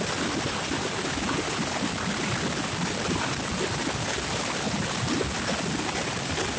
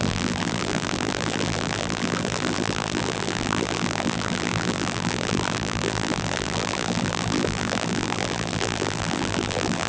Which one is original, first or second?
first